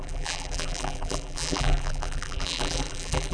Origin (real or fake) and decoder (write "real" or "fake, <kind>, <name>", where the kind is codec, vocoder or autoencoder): fake, vocoder, BigVGAN v2